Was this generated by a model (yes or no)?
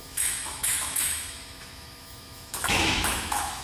yes